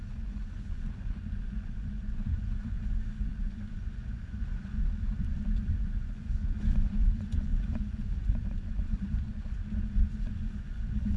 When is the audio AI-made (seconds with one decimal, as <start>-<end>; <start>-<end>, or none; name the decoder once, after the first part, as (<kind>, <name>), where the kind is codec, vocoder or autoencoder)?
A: 0.0-11.2 (vocoder, Vocos)

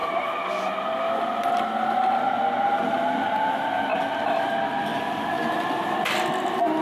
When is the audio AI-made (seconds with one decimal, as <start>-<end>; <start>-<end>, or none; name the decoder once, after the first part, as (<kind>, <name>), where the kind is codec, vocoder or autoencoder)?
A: none

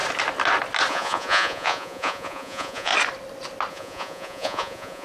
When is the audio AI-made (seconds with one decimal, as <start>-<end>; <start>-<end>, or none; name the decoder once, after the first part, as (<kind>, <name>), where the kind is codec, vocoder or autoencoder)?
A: 0.9-2.9 (vocoder, Vocos); 3.7-5.0

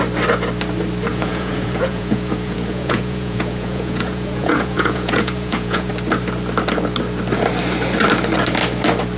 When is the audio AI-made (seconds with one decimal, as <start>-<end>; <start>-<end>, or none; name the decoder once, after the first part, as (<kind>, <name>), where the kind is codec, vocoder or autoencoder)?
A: 1.1-5.9 (vocoder, Vocos)

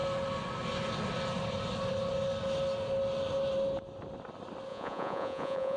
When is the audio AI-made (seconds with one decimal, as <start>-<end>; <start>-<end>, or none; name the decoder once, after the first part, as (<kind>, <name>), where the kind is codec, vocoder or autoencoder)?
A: 4.7-5.8 (vocoder, Vocos)

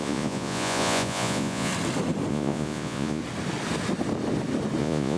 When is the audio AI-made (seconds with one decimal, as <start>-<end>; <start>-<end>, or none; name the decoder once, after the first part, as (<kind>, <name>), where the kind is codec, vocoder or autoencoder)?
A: 0.0-1.7 (vocoder, Vocos); 2.3-3.2; 4.8-5.2

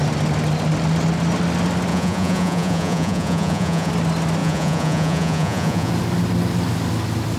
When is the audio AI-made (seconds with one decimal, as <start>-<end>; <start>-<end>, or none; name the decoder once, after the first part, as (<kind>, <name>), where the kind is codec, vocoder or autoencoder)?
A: 1.9-3.9 (vocoder, Vocos); 4.4-5.9